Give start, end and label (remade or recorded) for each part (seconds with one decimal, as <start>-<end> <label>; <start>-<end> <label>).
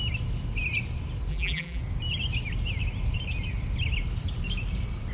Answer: 0.0-1.3 recorded; 1.3-1.8 remade; 1.8-5.1 recorded